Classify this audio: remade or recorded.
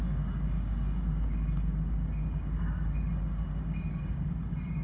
remade